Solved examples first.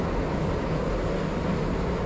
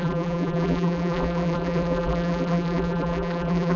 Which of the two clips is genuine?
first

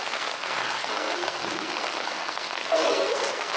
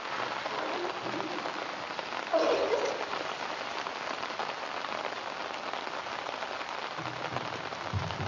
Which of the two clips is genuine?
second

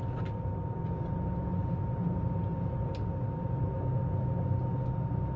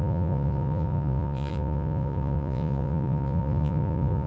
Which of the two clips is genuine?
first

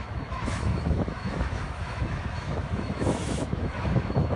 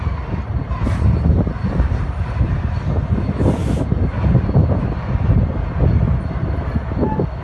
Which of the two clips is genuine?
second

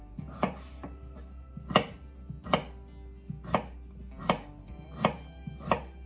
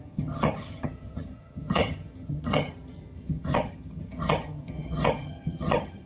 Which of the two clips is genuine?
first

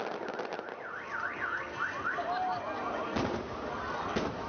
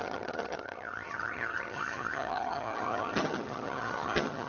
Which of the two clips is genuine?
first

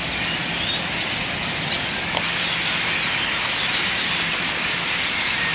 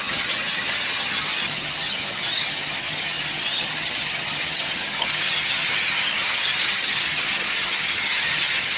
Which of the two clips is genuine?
first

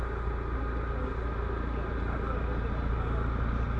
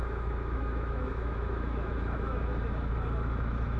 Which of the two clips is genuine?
first